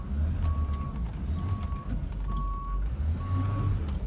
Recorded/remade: recorded